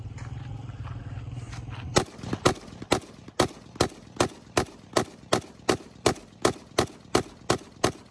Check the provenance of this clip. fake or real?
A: real